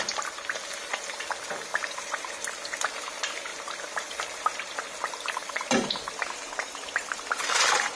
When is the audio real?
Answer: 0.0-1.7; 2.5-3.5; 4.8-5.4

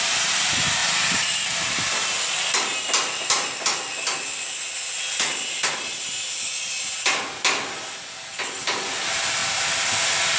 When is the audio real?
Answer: 0.0-10.4

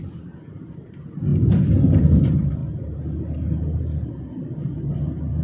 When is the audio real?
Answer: 0.0-5.4

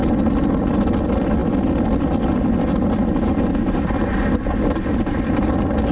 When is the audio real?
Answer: 0.0-5.9

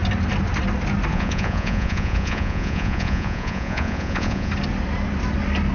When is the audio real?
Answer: 0.0-1.1; 4.5-5.7

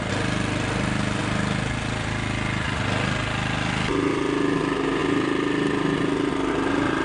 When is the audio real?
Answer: 0.0-7.0